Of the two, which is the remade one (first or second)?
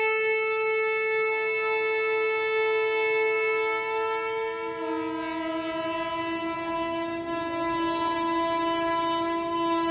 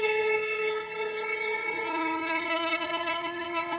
second